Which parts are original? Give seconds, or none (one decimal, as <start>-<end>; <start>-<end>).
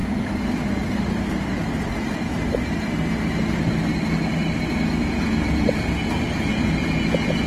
0.0-5.0; 5.9-6.5